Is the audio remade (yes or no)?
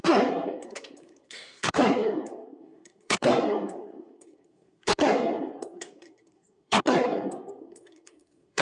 yes